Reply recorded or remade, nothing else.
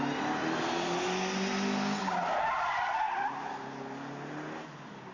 recorded